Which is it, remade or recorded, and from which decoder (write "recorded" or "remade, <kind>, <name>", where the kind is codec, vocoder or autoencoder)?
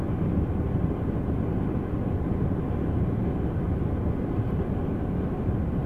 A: recorded